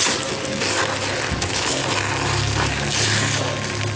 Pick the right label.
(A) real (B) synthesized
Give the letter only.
A